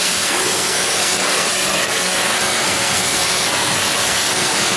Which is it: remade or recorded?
remade